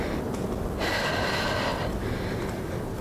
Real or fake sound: real